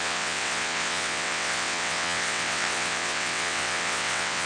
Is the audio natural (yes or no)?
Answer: no